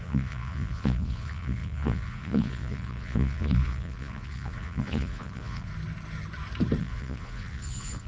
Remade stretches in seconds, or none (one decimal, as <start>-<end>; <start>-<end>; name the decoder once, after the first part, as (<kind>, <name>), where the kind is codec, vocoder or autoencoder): 0.0-5.7 (vocoder, Vocos); 6.8-8.1